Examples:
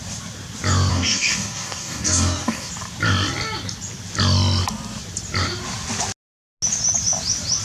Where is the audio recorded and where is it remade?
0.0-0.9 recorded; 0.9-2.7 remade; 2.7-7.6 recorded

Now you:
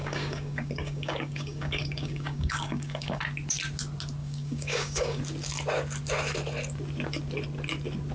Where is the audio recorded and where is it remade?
0.0-3.2 remade; 3.2-4.2 recorded; 4.2-5.2 remade; 5.2-8.1 recorded

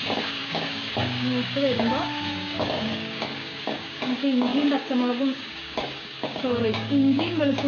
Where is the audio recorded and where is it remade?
0.0-7.7 remade

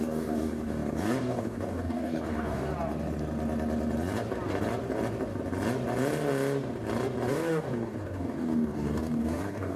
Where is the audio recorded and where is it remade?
0.0-2.7 remade; 2.7-7.3 recorded; 7.3-9.8 remade

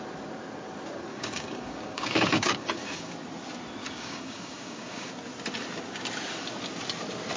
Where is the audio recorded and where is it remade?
0.0-1.1 recorded; 1.1-3.1 remade; 3.1-3.8 recorded; 3.8-5.1 remade; 5.1-7.4 recorded

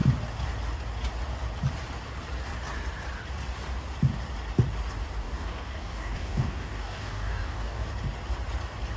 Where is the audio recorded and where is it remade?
0.0-5.2 recorded; 5.2-7.9 remade; 7.9-9.0 recorded